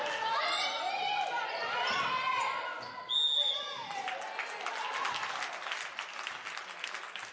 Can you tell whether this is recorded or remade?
recorded